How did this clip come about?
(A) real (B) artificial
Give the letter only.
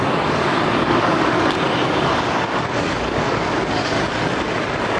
B